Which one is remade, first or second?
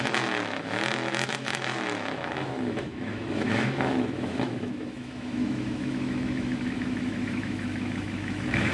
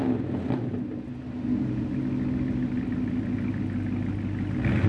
first